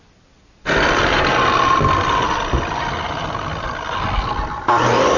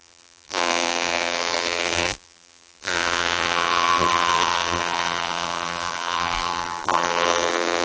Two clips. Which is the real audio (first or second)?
first